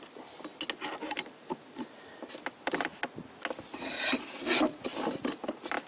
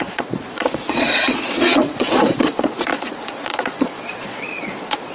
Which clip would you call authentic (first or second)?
first